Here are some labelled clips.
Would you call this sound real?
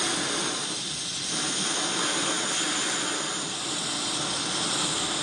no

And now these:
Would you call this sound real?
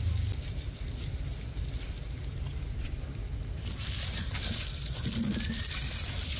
yes